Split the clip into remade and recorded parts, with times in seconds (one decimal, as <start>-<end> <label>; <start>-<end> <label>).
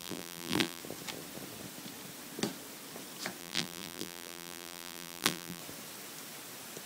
0.0-0.8 remade; 0.8-3.4 recorded; 3.4-5.6 remade; 5.6-6.9 recorded